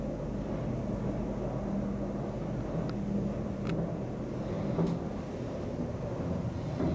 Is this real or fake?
real